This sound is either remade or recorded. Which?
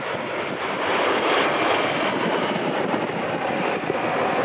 recorded